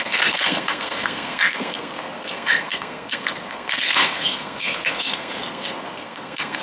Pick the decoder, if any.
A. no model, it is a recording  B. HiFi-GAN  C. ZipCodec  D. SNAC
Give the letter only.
D